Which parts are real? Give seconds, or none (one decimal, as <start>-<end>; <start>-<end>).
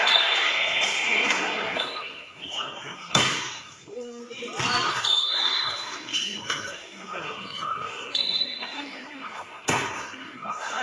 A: 4.2-4.9